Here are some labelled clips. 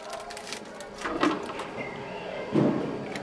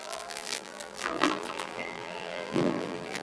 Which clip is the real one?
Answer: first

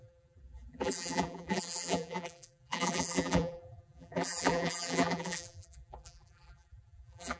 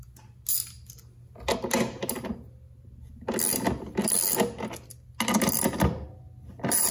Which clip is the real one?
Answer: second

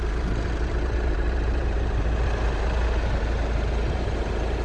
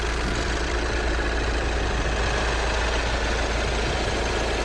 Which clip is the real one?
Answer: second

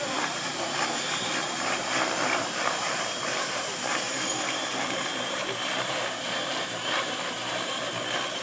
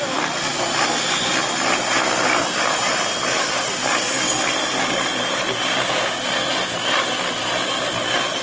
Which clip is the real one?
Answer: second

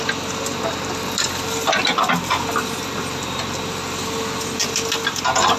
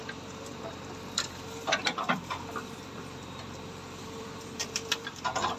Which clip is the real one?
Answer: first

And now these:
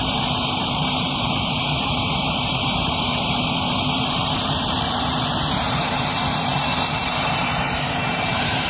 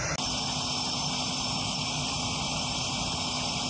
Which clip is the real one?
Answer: second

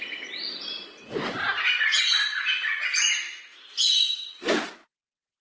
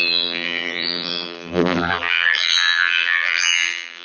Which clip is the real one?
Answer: first